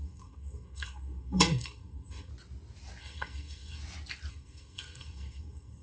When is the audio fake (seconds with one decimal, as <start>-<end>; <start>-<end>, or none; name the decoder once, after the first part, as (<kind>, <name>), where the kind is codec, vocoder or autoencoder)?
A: 0.0-2.3 (codec, SNAC); 3.0-3.8; 4.3-5.8